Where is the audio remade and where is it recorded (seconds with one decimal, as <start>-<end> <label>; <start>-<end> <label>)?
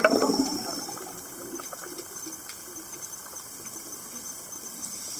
0.0-5.2 recorded